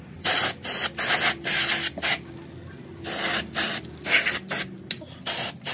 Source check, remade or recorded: recorded